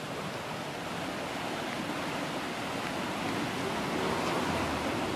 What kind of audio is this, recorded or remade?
recorded